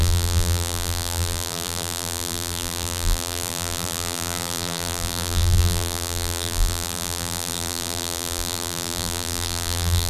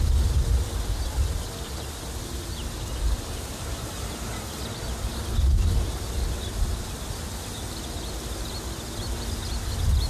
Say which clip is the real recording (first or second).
second